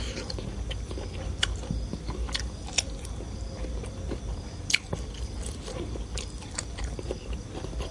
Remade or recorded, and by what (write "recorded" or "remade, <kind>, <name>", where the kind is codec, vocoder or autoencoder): recorded